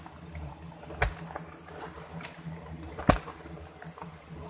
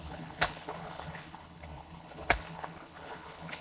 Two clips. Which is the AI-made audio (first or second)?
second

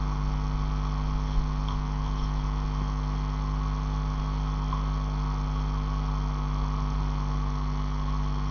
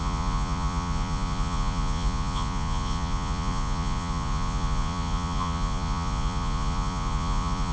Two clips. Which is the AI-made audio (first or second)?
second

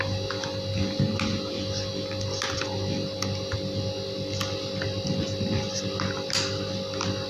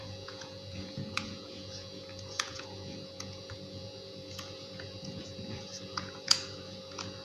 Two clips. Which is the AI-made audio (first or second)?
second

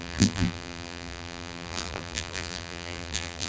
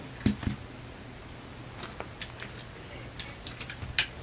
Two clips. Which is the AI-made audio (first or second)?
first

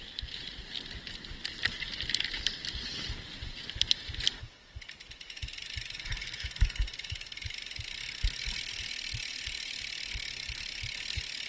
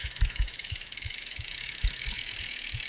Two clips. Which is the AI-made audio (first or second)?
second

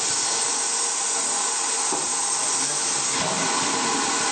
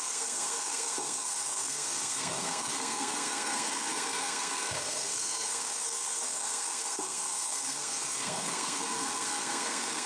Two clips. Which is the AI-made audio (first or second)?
second